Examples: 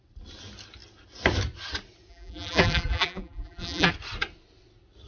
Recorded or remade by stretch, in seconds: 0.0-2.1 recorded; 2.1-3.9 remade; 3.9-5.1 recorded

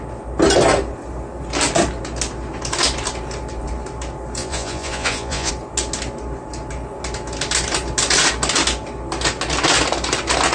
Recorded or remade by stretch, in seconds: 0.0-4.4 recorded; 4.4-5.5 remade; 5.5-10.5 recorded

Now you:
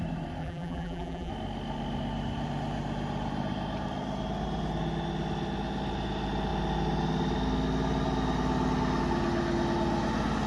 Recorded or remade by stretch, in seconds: 0.0-0.4 recorded; 0.4-1.3 remade; 1.3-10.5 recorded

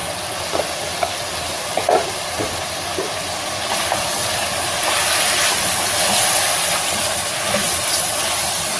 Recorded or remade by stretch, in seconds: 0.0-8.8 recorded

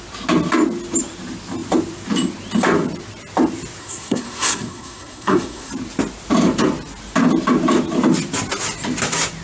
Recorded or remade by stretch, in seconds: 0.0-3.8 recorded; 3.8-5.7 remade; 5.7-9.4 recorded

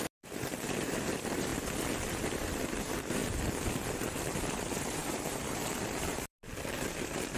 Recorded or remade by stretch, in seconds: 0.0-1.5 remade; 1.5-2.1 recorded; 2.1-3.2 remade; 3.2-3.9 recorded; 3.9-7.4 remade

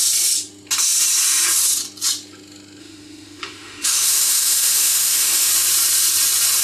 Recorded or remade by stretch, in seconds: 0.0-2.8 recorded; 2.8-5.5 remade; 5.5-6.6 recorded

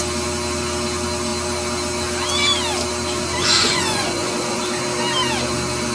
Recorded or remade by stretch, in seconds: 0.0-3.4 recorded; 3.4-4.6 remade; 4.6-5.9 recorded